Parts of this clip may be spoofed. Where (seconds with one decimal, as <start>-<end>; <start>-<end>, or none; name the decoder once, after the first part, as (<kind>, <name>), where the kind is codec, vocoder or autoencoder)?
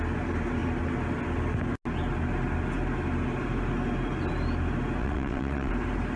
5.0-5.7 (vocoder, WaveNeXt)